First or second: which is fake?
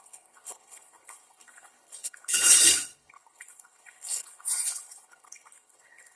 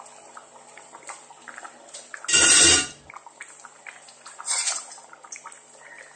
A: first